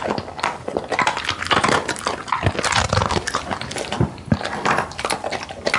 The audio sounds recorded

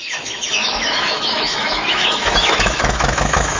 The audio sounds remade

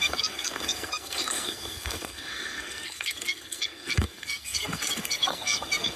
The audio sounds remade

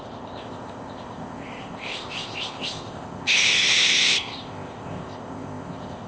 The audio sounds remade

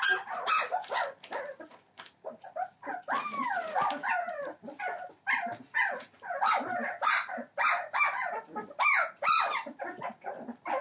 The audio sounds recorded